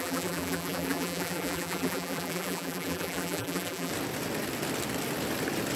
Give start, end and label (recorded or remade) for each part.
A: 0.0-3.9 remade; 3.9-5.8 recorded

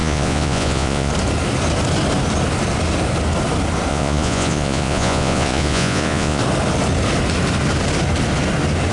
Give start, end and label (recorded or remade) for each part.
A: 0.0-1.1 remade; 1.1-3.9 recorded; 3.9-6.4 remade; 6.4-8.9 recorded

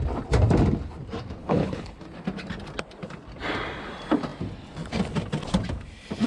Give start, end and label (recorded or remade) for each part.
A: 0.0-1.4 recorded; 1.4-2.0 remade; 2.0-6.3 recorded